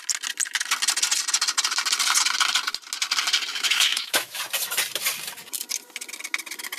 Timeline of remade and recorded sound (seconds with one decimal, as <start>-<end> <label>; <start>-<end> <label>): 0.0-3.5 recorded; 3.5-4.4 remade; 4.4-6.8 recorded